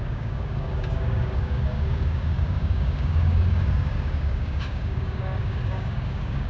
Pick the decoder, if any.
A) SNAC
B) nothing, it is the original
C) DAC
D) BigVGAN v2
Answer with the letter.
C